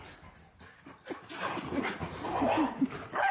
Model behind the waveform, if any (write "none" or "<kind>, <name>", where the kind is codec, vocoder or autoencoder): none